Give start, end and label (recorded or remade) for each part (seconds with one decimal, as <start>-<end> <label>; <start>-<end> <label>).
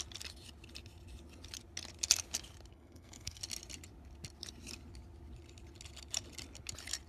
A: 0.0-2.7 recorded; 2.7-3.4 remade; 3.4-7.1 recorded